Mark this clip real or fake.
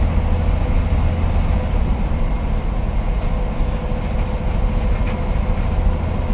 real